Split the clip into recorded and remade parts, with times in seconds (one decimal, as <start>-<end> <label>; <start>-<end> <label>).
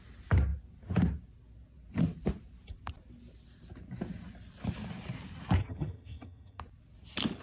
0.0-5.6 recorded; 5.6-6.6 remade; 6.6-7.4 recorded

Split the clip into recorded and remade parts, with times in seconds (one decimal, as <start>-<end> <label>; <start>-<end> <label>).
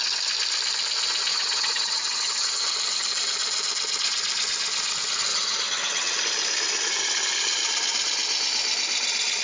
0.0-1.3 recorded; 1.3-2.6 remade; 2.6-5.3 recorded; 5.3-6.2 remade; 6.2-9.4 recorded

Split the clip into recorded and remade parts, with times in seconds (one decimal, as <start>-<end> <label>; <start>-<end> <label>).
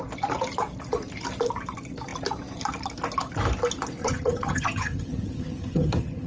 0.0-4.0 recorded; 4.0-6.3 remade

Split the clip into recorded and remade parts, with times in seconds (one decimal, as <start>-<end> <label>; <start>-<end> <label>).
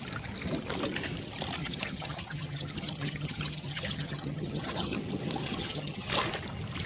0.0-1.6 recorded; 1.6-5.0 remade; 5.0-5.4 recorded; 5.4-6.1 remade; 6.1-6.9 recorded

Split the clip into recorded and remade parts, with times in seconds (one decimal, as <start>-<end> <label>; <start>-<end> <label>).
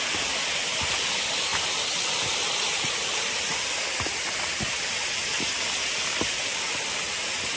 0.0-7.6 recorded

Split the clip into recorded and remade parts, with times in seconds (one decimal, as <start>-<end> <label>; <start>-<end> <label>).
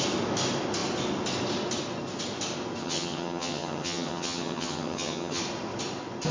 0.0-2.8 recorded; 2.8-5.4 remade; 5.4-6.3 recorded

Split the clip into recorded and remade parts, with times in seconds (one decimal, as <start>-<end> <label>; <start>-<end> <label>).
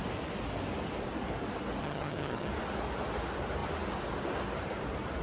0.0-1.8 recorded; 1.8-2.5 remade; 2.5-5.2 recorded